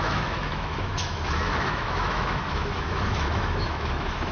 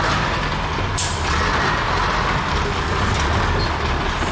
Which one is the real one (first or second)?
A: second